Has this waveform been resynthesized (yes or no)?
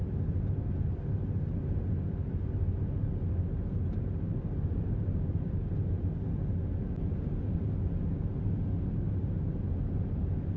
no